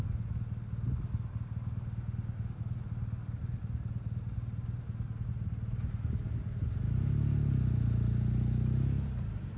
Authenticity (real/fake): real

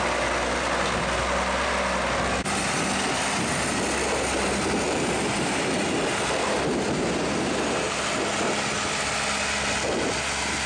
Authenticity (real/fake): real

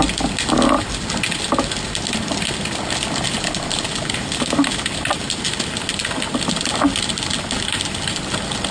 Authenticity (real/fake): real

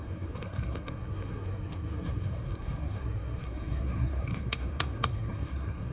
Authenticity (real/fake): fake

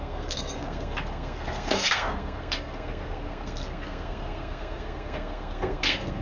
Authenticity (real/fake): fake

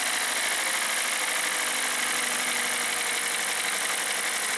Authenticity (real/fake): real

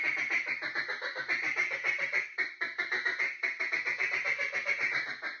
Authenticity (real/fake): real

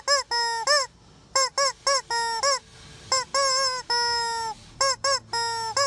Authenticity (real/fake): real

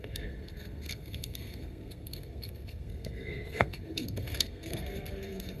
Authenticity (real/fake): fake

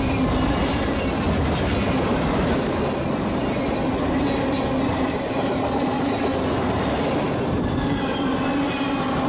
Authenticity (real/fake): real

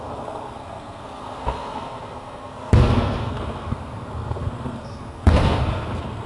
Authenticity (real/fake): fake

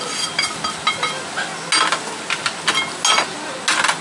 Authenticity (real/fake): real